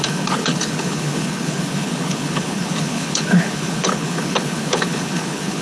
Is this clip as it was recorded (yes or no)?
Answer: no